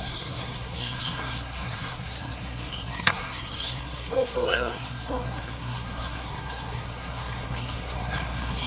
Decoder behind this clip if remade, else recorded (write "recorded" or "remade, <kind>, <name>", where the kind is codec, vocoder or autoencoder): remade, codec, SNAC